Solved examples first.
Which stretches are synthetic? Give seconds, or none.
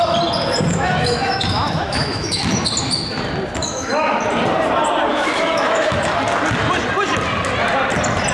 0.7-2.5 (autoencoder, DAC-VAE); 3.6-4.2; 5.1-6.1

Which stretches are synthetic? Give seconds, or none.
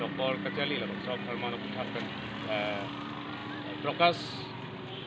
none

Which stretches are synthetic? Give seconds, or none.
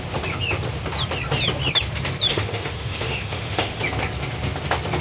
2.3-3.8 (autoencoder, DAC-VAE)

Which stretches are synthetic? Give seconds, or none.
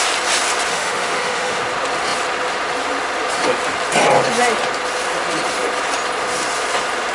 0.7-1.6 (autoencoder, DAC-VAE)